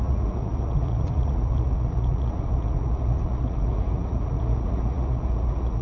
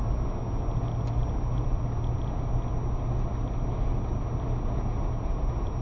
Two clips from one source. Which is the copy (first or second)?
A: first